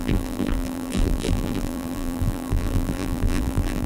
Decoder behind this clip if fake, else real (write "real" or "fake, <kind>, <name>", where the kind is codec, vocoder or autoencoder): fake, vocoder, BigVGAN v2